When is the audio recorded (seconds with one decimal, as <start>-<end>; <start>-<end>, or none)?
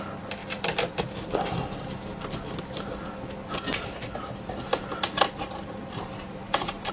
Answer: 0.0-0.4; 1.0-4.7